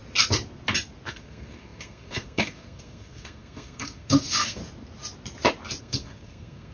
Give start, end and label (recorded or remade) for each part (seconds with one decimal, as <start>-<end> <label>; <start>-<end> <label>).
0.0-1.1 recorded; 1.1-4.6 remade; 4.6-5.8 recorded; 5.8-6.7 remade